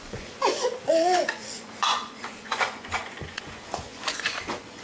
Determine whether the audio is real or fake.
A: fake